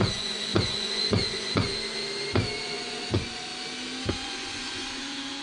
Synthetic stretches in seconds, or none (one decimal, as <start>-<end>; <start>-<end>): 0.0-1.7; 2.6-3.5; 4.1-5.4